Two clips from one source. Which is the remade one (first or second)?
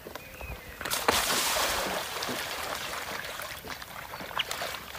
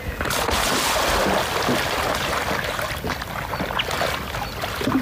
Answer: first